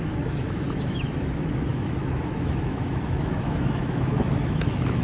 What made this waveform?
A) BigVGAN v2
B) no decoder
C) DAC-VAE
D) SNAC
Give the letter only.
C